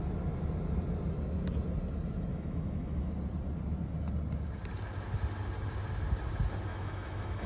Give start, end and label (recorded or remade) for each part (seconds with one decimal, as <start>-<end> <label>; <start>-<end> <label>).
0.0-2.3 recorded; 2.3-3.1 remade; 3.1-6.7 recorded; 6.7-7.5 remade